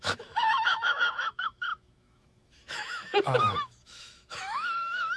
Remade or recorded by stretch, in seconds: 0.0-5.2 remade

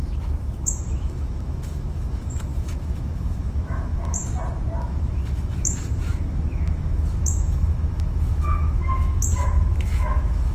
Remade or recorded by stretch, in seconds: 0.0-4.2 remade; 4.2-4.8 recorded; 4.8-10.5 remade

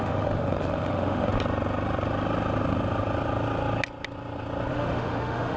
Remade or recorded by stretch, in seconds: 0.0-1.3 remade; 1.3-4.7 recorded; 4.7-5.6 remade